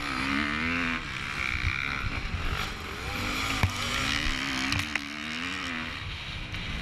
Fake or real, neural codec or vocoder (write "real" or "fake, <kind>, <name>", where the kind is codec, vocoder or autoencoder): real